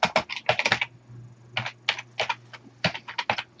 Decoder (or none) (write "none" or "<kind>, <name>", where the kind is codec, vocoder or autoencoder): none